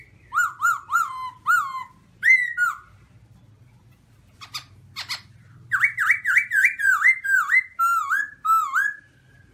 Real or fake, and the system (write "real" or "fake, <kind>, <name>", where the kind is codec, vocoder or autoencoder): real